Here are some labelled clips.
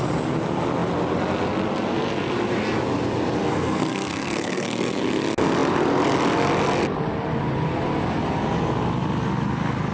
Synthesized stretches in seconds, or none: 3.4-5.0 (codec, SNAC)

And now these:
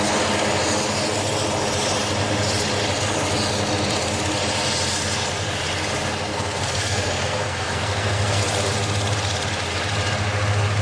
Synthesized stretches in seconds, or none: 6.3-8.4 (codec, SNAC)

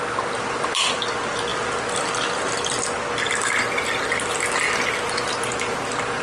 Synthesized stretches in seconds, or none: none

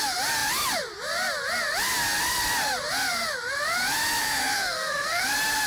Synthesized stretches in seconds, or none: 4.2-5.2 (codec, SNAC)

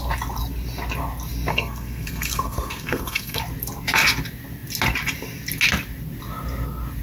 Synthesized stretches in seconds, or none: 1.5-3.4 (codec, SNAC)